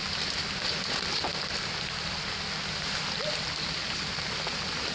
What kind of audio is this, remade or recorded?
recorded